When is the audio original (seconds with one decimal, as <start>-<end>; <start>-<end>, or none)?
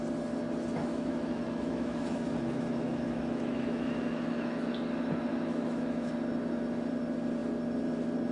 0.0-0.8; 4.7-5.3; 6.1-8.3